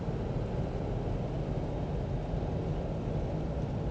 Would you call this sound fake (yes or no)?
no